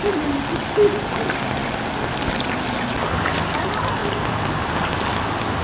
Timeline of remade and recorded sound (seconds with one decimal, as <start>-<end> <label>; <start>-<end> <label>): 0.0-4.0 recorded; 4.0-4.7 remade; 4.7-5.6 recorded